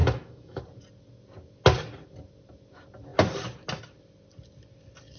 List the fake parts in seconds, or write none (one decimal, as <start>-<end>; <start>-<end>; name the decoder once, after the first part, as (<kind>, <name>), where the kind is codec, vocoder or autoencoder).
0.0-0.6 (autoencoder, DAC-VAE)